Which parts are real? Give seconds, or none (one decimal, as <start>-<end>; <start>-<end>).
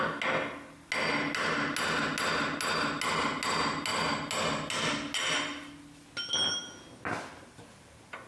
0.0-8.3